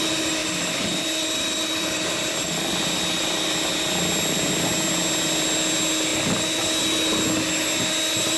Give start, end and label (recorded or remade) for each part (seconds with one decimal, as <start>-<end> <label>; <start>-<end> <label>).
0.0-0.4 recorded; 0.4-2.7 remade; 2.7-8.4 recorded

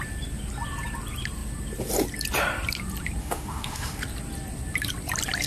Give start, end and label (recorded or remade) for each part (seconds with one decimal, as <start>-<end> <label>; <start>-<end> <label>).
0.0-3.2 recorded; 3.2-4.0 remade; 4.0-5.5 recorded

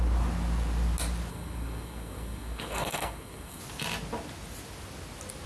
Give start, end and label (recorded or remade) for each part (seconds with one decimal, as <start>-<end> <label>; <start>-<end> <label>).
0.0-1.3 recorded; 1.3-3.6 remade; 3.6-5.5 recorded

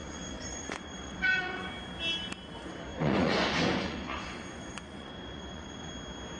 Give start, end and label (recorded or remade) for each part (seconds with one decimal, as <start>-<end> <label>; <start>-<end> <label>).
0.0-1.7 remade; 1.7-2.9 recorded; 2.9-5.9 remade; 5.9-6.4 recorded

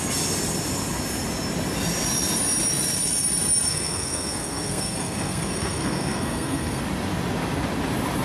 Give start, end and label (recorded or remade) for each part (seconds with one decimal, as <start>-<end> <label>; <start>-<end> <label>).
0.0-3.7 recorded; 3.7-6.8 remade; 6.8-8.2 recorded

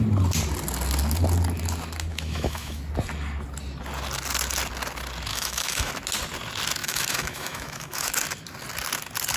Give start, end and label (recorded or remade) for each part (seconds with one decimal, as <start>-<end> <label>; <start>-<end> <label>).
0.0-2.1 recorded; 2.1-2.8 remade; 2.8-5.3 recorded; 5.3-5.9 remade; 5.9-6.8 recorded; 6.8-8.1 remade; 8.1-9.4 recorded

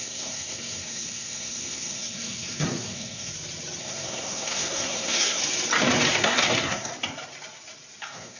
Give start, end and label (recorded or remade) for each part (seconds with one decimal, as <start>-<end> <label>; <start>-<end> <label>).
0.0-3.3 remade; 3.3-3.8 recorded; 3.8-5.4 remade; 5.4-6.1 recorded; 6.1-6.9 remade; 6.9-8.0 recorded; 8.0-8.4 remade

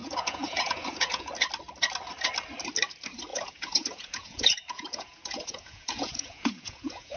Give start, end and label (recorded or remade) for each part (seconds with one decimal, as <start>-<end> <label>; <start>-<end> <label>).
0.0-1.3 remade; 1.3-3.3 recorded; 3.3-7.2 remade